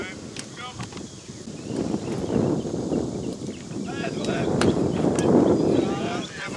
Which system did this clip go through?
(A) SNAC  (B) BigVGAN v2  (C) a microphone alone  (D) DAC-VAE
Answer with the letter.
C